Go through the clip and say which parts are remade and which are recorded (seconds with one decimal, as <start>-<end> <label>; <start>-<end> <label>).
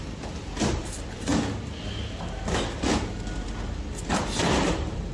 0.0-1.3 remade; 1.3-4.4 recorded; 4.4-5.1 remade